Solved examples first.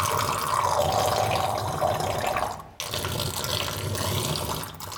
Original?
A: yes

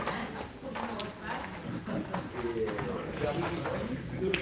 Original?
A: yes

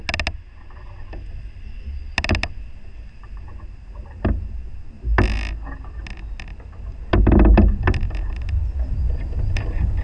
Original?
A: yes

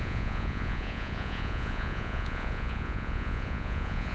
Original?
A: no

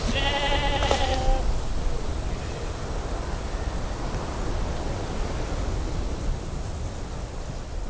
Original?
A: yes